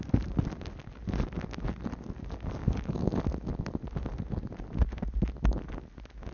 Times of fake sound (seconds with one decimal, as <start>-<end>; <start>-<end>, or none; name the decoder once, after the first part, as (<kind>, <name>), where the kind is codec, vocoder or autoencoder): 2.6-3.2 (codec, DAC)